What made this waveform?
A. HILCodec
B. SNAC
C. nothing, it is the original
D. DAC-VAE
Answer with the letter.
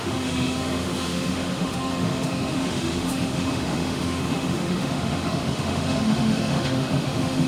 D